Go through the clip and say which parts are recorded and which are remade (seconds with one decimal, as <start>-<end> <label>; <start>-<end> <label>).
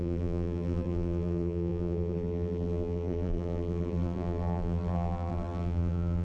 0.0-6.2 remade